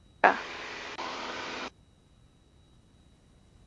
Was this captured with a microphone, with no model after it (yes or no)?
no